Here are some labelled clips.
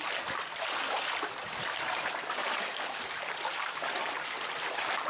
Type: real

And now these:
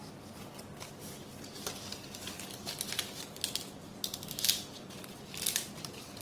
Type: real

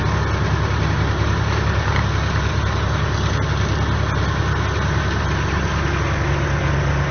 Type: real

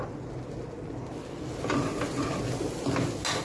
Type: real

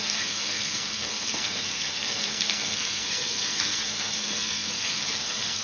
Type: fake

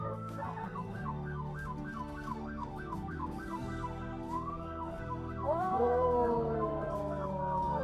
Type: fake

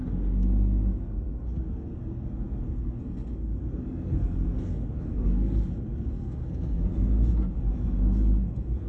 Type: fake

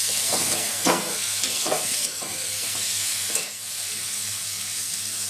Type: fake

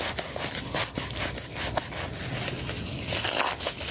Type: real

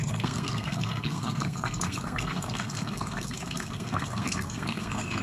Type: fake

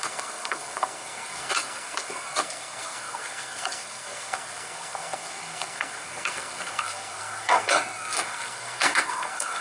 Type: fake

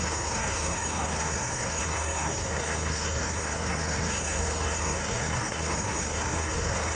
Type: fake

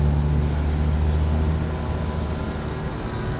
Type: real